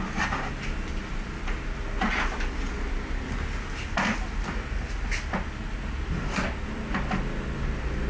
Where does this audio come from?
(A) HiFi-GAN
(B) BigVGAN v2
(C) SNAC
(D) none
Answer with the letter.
D